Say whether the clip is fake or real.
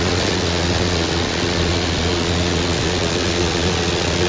fake